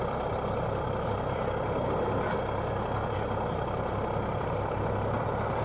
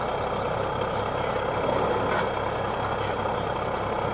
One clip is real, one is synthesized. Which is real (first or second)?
second